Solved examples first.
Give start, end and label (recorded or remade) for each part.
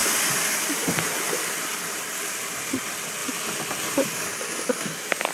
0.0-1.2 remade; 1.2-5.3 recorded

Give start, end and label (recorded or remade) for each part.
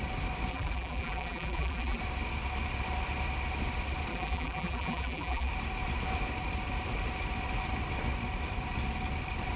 0.0-0.5 recorded; 0.5-2.0 remade; 2.0-4.1 recorded; 4.1-5.5 remade; 5.5-9.6 recorded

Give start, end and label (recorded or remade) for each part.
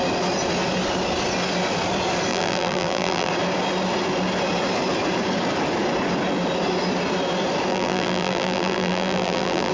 0.0-2.3 recorded; 2.3-3.3 remade; 3.3-7.7 recorded; 7.7-9.7 remade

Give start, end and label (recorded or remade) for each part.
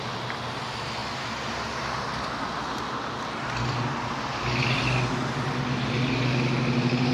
0.0-7.1 recorded